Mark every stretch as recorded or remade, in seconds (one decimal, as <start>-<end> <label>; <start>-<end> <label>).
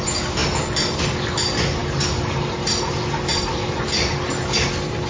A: 0.0-5.1 recorded